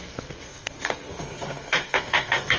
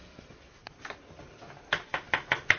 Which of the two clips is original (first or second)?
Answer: second